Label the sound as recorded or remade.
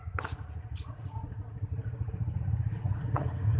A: remade